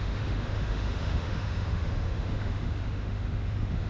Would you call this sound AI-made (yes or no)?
yes